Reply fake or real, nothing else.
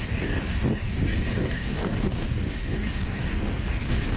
fake